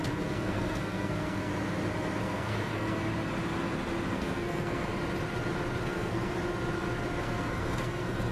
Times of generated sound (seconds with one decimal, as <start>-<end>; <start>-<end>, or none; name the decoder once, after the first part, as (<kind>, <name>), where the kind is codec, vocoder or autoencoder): 0.0-1.5 (codec, SNAC); 2.2-3.0; 4.1-4.9; 5.8-6.4; 7.2-8.3